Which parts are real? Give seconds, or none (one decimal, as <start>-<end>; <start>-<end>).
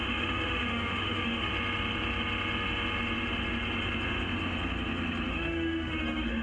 1.5-5.3